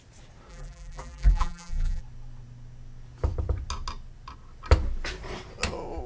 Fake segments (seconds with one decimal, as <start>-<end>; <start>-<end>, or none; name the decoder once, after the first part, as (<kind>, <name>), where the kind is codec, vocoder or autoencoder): 0.5-2.0 (vocoder, BigVGAN v2)